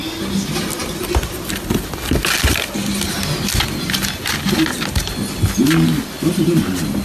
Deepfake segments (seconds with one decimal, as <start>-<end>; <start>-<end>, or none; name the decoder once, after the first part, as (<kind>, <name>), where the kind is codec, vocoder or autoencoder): none